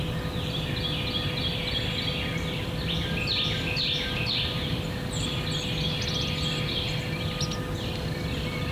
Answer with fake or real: real